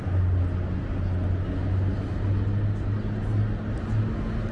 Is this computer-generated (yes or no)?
no